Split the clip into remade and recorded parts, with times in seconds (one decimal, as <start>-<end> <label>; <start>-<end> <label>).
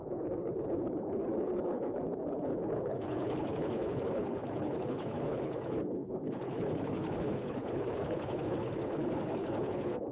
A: 0.0-10.1 remade